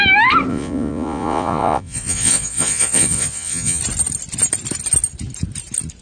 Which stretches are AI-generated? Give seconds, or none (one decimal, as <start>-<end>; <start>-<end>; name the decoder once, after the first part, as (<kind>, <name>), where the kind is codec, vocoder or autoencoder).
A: 0.5-3.8 (vocoder, Vocos)